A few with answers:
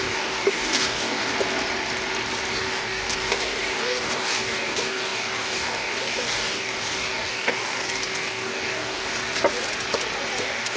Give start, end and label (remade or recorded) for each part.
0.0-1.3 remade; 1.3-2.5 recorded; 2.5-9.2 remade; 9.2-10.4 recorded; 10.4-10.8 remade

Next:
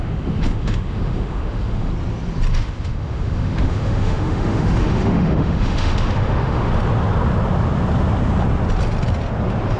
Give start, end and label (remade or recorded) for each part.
0.0-1.9 remade; 1.9-2.5 recorded; 2.5-6.7 remade; 6.7-9.8 recorded

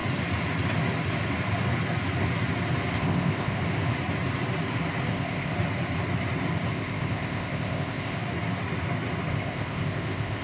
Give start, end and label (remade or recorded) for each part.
0.0-2.9 recorded; 2.9-3.6 remade; 3.6-5.1 recorded; 5.1-5.5 remade; 5.5-6.7 recorded; 6.7-8.2 remade; 8.2-9.3 recorded; 9.3-10.4 remade

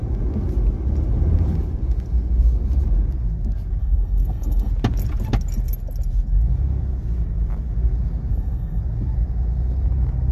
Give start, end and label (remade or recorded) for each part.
0.0-3.8 recorded; 3.8-4.7 remade; 4.7-8.3 recorded; 8.3-8.8 remade; 8.8-10.3 recorded

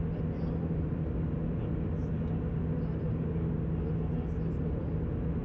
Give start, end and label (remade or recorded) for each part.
0.0-2.0 remade; 2.0-5.4 recorded

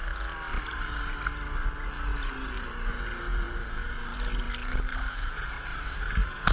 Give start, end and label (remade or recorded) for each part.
0.0-0.5 recorded; 0.5-1.2 remade; 1.2-2.1 recorded; 2.1-2.9 remade; 2.9-4.7 recorded; 4.7-6.5 remade

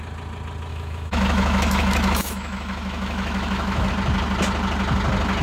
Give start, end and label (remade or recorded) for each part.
0.0-0.7 recorded; 0.7-3.9 remade; 3.9-5.4 recorded

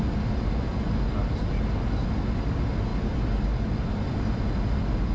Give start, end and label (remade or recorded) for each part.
0.0-5.1 recorded